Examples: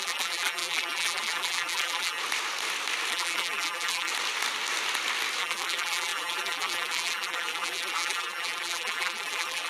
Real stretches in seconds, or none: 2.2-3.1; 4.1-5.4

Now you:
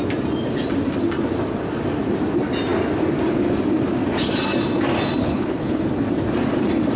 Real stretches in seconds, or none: 0.0-5.2; 5.8-7.0

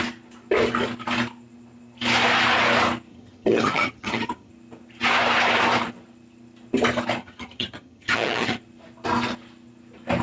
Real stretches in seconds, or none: 0.0-3.1; 4.5-7.2; 8.6-10.2

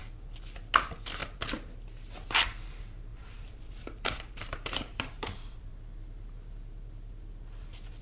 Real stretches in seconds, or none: 0.0-3.1; 5.7-8.0

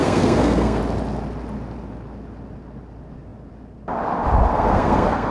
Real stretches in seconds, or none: 0.8-4.5